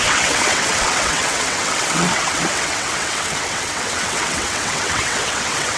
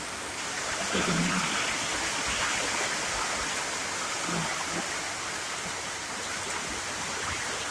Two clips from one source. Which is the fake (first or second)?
first